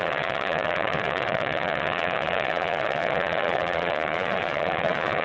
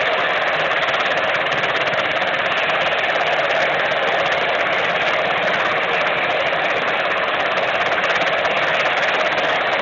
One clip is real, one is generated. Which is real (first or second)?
second